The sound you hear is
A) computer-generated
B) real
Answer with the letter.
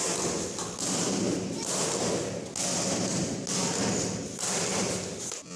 B